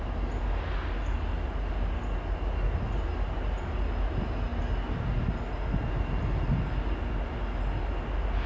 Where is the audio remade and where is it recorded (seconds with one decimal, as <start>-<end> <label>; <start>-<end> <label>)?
0.0-8.5 recorded